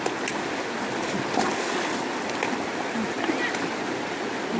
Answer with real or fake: real